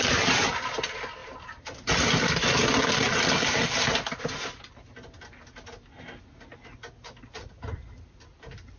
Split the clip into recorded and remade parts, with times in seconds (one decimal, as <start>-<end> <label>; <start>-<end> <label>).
0.0-1.2 recorded; 1.2-4.2 remade; 4.2-8.8 recorded